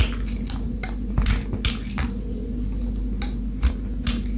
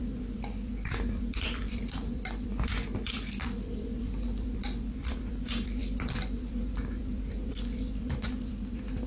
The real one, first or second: first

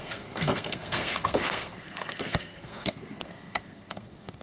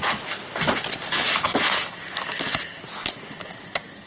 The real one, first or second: second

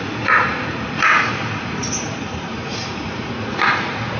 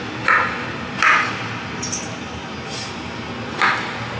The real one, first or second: second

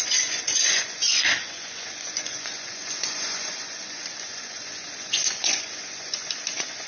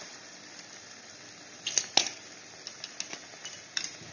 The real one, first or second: second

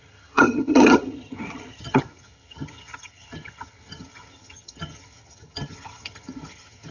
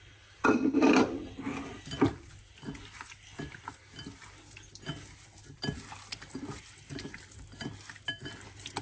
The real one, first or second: second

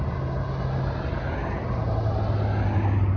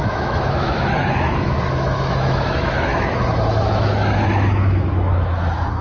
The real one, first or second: first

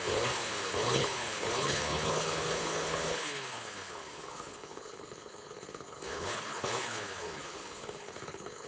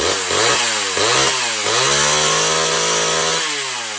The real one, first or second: second